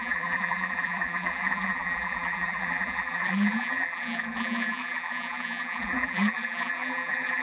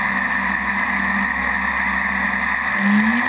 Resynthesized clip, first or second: first